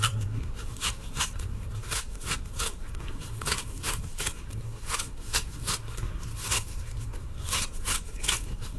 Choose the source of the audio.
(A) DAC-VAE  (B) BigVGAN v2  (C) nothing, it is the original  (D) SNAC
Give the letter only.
D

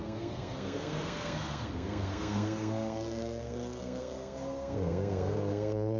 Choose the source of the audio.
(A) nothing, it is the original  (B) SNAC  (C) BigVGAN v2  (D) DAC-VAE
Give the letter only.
B